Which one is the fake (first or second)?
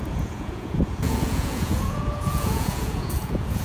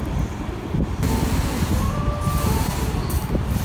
first